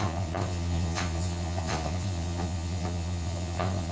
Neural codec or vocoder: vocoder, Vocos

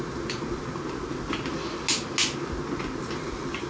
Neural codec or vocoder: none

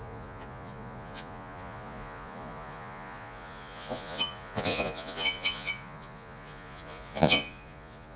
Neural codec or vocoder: vocoder, Vocos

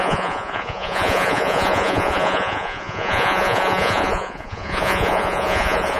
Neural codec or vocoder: vocoder, Vocos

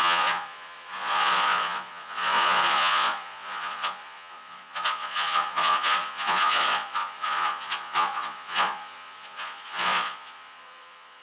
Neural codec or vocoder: vocoder, Vocos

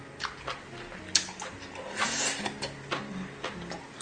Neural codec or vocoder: none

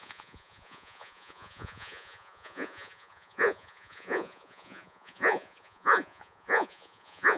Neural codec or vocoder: vocoder, Vocos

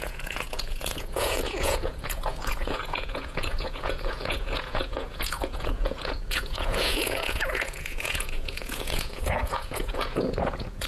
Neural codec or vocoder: vocoder, Vocos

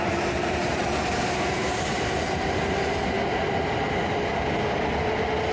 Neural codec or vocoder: none